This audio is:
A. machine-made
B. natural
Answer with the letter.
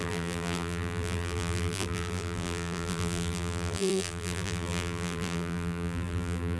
A